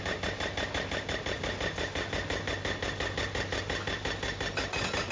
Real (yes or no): yes